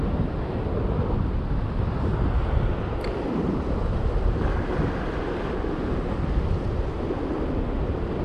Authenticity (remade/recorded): recorded